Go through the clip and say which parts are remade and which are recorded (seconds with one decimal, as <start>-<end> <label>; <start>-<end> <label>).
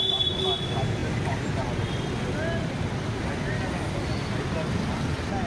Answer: 0.0-5.5 recorded